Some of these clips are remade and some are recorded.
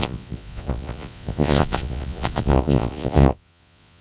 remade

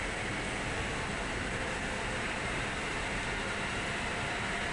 recorded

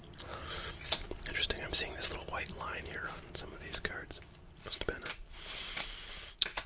recorded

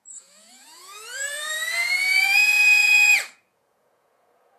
remade